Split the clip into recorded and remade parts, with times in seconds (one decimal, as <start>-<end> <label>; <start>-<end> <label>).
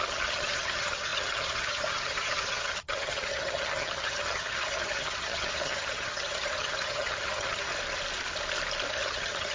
0.0-7.7 remade; 7.7-8.9 recorded; 8.9-9.5 remade